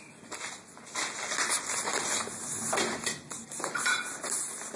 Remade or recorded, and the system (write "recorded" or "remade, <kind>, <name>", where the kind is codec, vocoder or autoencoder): recorded